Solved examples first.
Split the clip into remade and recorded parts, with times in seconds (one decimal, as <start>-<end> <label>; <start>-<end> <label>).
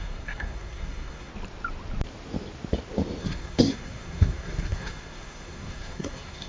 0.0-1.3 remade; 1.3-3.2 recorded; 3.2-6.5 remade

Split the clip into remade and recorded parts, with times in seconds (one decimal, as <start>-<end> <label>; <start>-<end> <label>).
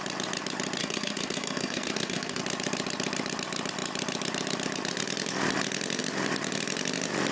0.0-0.8 recorded; 0.8-2.4 remade; 2.4-7.3 recorded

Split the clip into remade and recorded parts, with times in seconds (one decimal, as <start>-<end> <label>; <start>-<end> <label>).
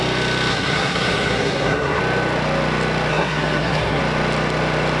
0.0-0.5 recorded; 0.5-2.0 remade; 2.0-3.1 recorded; 3.1-4.0 remade; 4.0-5.0 recorded